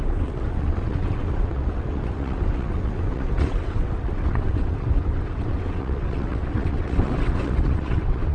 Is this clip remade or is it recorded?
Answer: remade